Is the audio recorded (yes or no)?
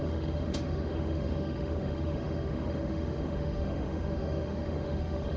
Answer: no